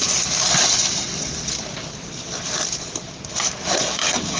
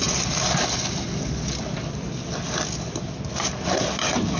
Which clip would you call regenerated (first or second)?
first